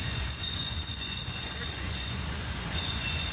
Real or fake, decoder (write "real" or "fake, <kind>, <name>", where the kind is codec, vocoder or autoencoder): fake, vocoder, Vocos